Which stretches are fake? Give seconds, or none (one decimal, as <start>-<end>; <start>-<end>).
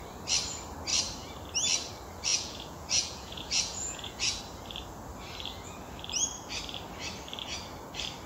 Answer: 2.3-4.4